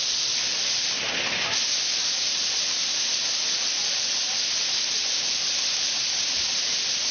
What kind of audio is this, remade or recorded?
remade